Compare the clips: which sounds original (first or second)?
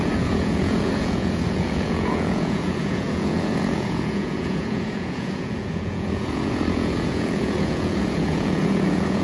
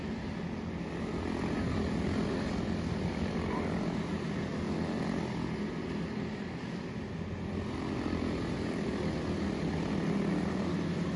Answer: second